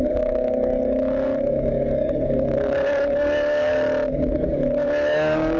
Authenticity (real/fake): fake